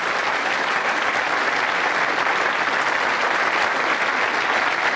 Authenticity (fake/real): real